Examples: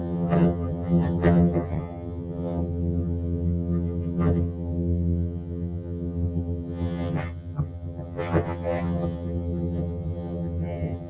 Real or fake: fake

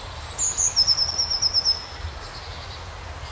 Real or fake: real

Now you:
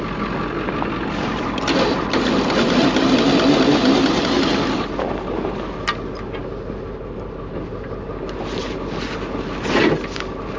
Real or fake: real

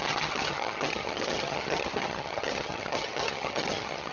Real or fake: fake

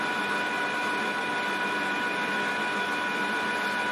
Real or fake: real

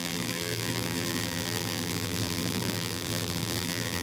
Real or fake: fake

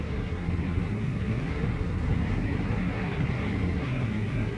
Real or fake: fake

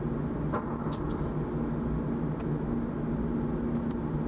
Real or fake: real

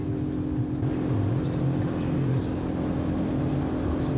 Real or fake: real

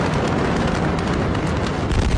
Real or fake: real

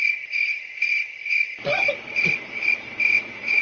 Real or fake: real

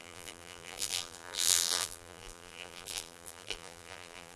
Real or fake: fake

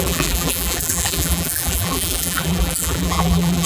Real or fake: fake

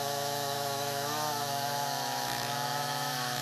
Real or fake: fake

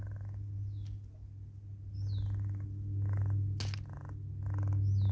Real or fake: real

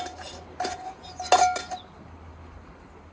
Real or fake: real